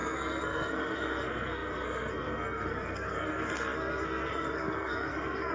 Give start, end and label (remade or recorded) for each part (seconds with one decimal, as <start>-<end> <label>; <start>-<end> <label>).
0.0-5.5 remade